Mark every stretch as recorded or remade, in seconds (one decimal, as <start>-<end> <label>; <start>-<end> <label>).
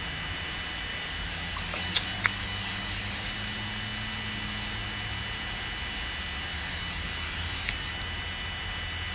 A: 0.0-0.9 recorded; 0.9-3.3 remade; 3.3-6.5 recorded; 6.5-7.9 remade; 7.9-9.1 recorded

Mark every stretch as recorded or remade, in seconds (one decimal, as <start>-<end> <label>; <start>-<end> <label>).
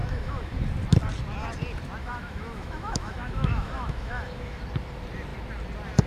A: 0.0-0.6 remade; 0.6-2.0 recorded; 2.0-4.6 remade; 4.6-6.1 recorded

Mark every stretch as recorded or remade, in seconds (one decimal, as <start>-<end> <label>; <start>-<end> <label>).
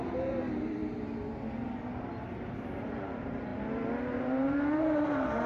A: 0.0-0.8 remade; 0.8-1.8 recorded; 1.8-5.5 remade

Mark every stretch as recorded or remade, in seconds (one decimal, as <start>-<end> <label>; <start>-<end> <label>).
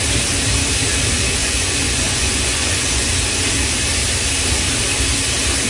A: 0.0-1.4 recorded; 1.4-3.1 remade; 3.1-5.7 recorded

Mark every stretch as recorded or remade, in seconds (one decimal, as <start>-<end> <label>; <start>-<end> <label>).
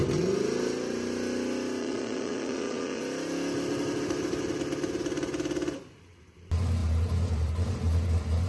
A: 0.0-1.8 recorded; 1.8-3.0 remade; 3.0-8.5 recorded